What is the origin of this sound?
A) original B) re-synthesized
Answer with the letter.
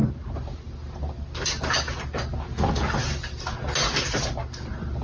A